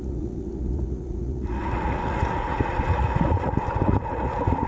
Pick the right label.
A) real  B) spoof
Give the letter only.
B